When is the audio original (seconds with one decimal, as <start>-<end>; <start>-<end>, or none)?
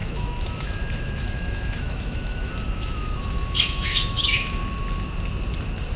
4.6-6.0